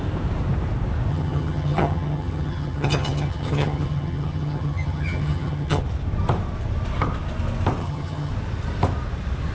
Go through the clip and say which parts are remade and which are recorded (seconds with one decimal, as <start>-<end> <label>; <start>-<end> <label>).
0.0-1.1 recorded; 1.1-5.8 remade; 5.8-7.8 recorded; 7.8-8.3 remade; 8.3-9.5 recorded